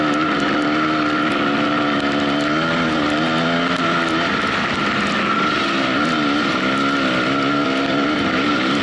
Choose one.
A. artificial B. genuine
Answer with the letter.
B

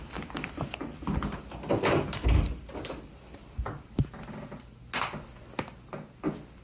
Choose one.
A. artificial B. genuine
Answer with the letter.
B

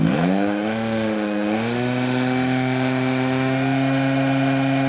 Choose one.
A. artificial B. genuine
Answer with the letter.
A